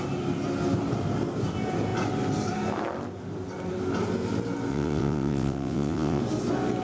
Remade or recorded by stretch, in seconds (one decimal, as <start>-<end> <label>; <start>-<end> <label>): 0.0-4.7 recorded; 4.7-6.2 remade; 6.2-6.8 recorded